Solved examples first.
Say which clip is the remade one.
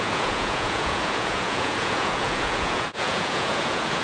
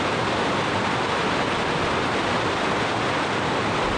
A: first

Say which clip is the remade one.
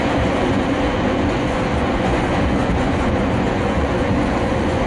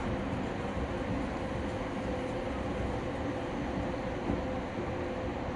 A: first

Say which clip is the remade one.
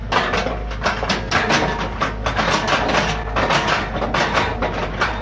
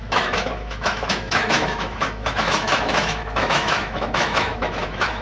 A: second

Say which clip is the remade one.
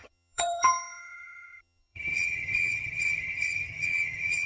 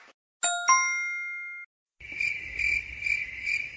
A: first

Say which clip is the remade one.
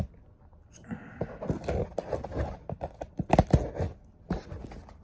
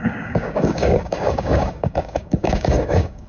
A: second